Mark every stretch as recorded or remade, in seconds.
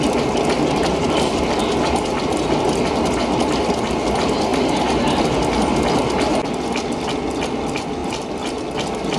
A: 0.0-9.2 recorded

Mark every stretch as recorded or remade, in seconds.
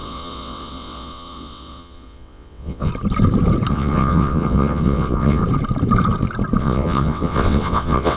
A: 0.0-2.9 remade; 2.9-3.7 recorded; 3.7-5.4 remade; 5.4-6.6 recorded; 6.6-8.2 remade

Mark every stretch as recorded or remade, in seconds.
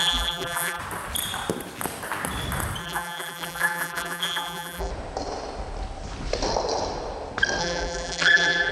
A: 0.0-0.8 remade; 0.8-2.8 recorded; 2.8-4.9 remade; 4.9-7.6 recorded; 7.6-8.7 remade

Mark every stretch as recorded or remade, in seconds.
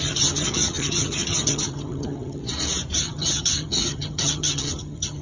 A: 0.0-2.4 remade; 2.4-3.0 recorded; 3.0-5.2 remade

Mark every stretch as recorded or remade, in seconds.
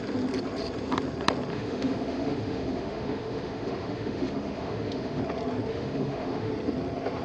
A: 0.0-1.5 recorded; 1.5-5.2 remade; 5.2-5.7 recorded; 5.7-6.5 remade; 6.5-7.2 recorded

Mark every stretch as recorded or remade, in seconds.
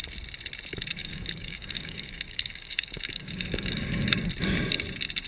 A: 0.0-1.0 recorded; 1.0-4.2 remade; 4.2-5.3 recorded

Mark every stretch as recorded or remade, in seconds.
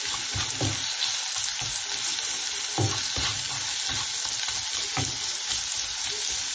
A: 0.0-6.5 recorded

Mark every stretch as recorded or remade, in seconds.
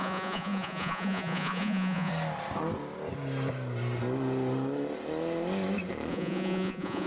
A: 0.0-2.1 remade; 2.1-6.1 recorded; 6.1-7.1 remade